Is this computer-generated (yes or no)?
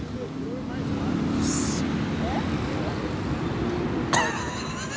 no